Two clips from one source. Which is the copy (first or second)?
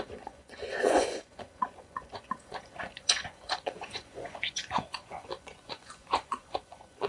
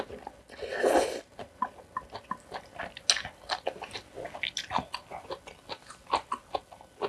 first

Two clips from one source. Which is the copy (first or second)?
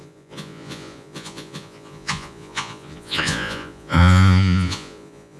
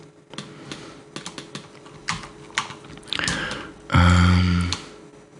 first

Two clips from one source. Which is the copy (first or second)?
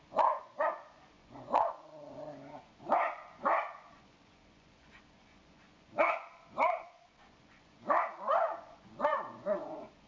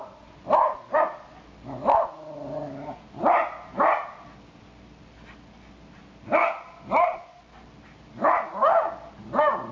first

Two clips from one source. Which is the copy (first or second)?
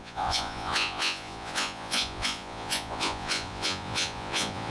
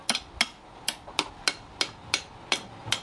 first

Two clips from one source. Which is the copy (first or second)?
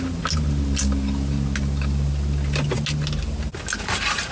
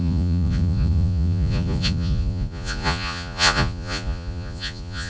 second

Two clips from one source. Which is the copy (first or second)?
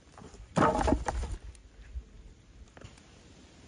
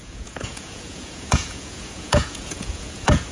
second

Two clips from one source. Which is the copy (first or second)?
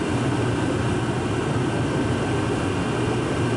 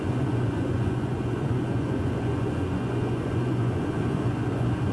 second